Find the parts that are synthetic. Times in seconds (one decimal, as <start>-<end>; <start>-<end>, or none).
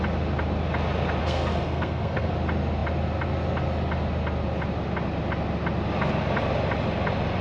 1.2-2.3